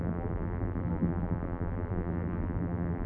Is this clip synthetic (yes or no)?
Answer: yes